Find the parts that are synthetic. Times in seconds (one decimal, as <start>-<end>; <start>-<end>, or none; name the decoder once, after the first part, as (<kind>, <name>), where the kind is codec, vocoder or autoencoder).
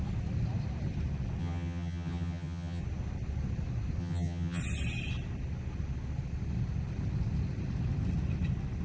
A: 1.4-2.8 (vocoder, HiFi-GAN); 4.0-4.6